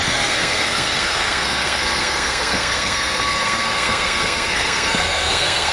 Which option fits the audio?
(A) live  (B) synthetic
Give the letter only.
B